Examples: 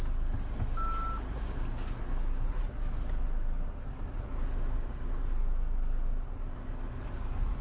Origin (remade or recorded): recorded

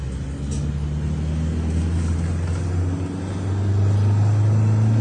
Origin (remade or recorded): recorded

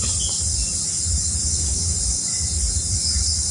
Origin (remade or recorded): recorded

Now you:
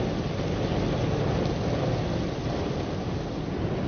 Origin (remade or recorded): recorded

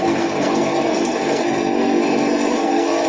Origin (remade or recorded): remade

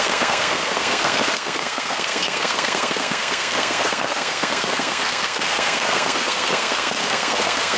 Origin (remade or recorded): remade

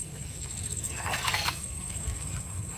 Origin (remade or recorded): remade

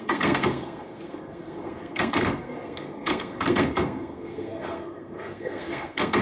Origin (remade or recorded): remade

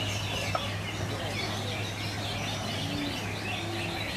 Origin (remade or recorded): recorded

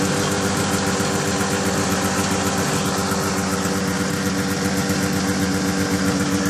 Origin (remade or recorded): recorded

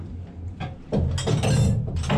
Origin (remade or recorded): recorded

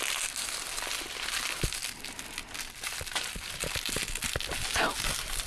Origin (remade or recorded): recorded